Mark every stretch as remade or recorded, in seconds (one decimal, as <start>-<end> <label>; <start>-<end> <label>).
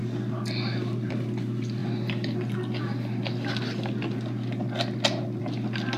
0.0-6.0 recorded